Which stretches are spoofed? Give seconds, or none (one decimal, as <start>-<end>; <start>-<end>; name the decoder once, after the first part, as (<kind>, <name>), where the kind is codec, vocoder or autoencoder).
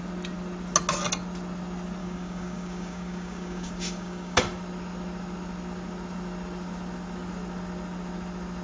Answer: 2.0-4.4 (codec, DAC)